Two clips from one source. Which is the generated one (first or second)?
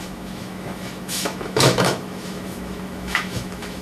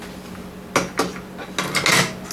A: first